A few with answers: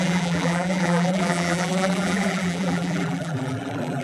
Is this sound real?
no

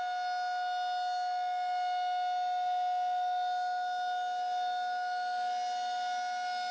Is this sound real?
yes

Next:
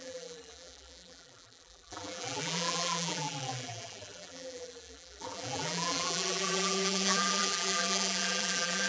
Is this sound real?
no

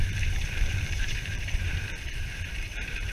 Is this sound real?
no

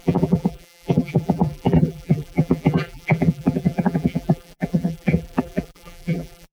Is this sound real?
no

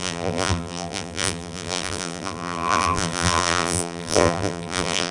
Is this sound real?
no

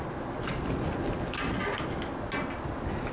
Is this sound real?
yes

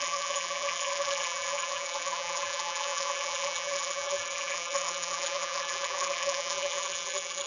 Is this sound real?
no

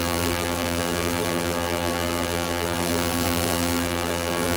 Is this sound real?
no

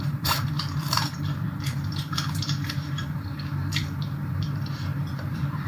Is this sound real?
no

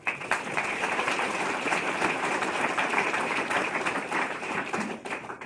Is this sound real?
no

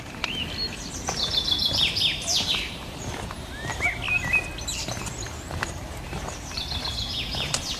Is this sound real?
no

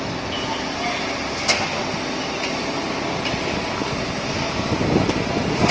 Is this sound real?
yes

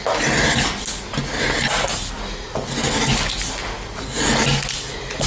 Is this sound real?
yes